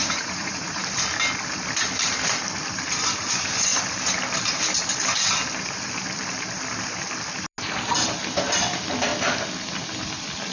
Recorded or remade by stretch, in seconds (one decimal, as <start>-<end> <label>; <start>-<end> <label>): 0.0-0.8 remade; 0.8-10.5 recorded